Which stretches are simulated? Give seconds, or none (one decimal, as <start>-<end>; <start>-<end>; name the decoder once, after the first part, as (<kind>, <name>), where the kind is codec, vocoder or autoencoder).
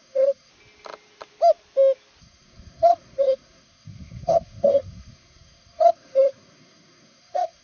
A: 0.0-0.5 (codec, SNAC); 2.2-7.6